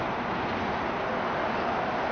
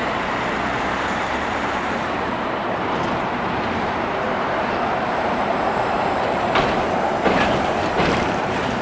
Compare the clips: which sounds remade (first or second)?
second